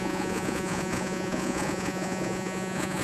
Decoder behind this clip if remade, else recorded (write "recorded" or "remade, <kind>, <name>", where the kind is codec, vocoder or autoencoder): remade, vocoder, Vocos